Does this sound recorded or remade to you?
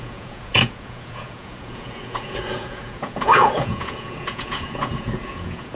remade